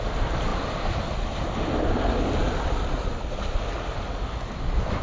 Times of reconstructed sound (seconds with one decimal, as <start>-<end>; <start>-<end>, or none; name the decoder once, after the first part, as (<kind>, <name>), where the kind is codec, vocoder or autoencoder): none